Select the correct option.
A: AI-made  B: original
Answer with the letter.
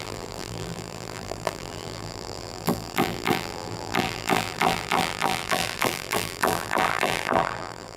A